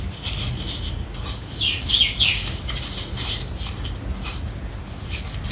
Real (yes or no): yes